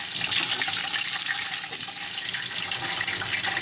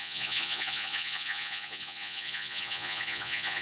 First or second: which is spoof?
second